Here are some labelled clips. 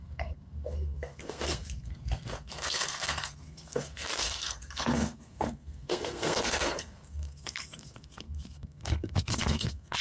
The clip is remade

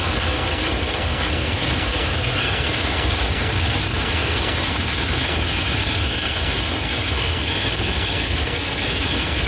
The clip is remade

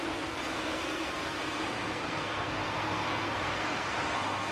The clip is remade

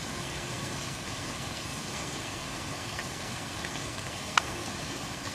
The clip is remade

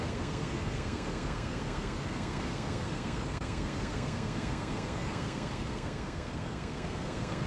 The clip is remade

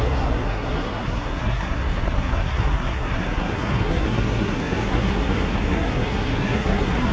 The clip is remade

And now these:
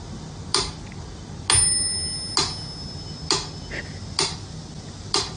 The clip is recorded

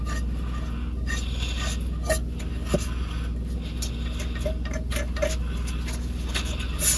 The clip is recorded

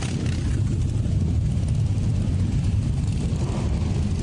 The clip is recorded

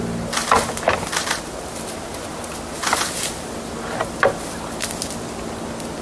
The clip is recorded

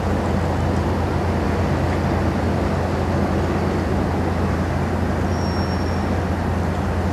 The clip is recorded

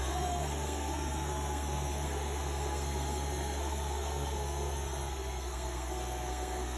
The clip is remade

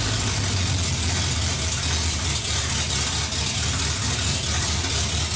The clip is recorded